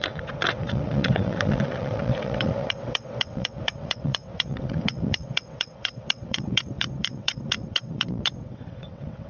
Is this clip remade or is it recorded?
remade